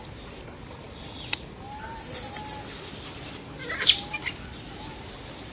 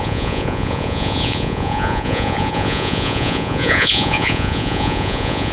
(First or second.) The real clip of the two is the first